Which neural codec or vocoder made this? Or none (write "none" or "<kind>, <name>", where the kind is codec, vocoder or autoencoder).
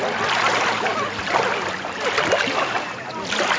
none